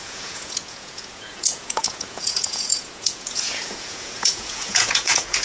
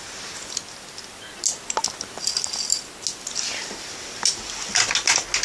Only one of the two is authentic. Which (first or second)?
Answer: second